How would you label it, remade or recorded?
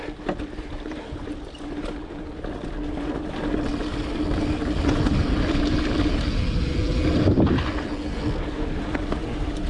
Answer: recorded